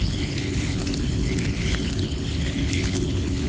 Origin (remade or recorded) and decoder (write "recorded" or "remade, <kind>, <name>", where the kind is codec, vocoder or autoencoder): remade, codec, HILCodec